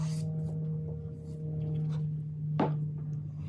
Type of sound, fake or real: real